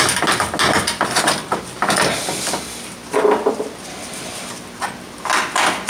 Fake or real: real